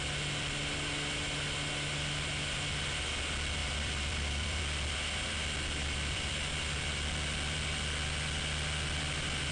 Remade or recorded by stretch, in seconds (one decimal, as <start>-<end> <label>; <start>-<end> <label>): 0.0-3.6 recorded; 3.6-4.6 remade; 4.6-5.8 recorded; 5.8-6.9 remade; 6.9-9.5 recorded